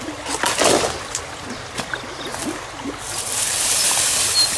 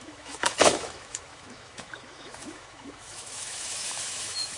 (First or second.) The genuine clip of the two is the first